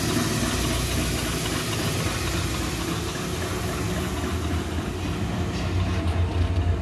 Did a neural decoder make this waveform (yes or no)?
no